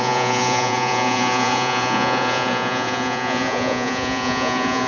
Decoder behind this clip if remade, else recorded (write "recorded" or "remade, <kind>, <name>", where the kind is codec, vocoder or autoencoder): remade, vocoder, Vocos